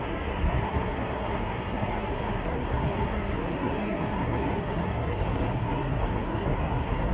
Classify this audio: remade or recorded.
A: remade